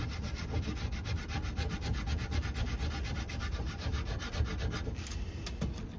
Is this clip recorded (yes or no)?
yes